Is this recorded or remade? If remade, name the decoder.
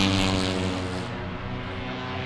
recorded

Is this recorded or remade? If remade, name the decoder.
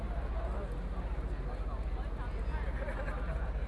recorded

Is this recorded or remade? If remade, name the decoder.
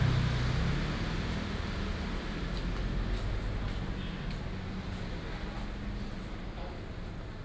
recorded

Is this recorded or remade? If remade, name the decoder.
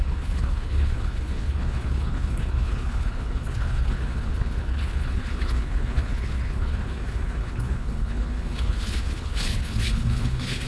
remade, codec, HILCodec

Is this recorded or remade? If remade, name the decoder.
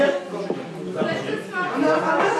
recorded